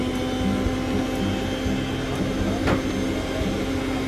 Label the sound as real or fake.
real